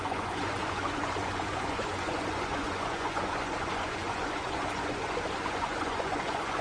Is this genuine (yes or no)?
no